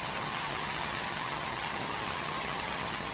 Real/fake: fake